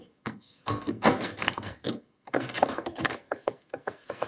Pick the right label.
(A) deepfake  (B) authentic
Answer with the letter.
A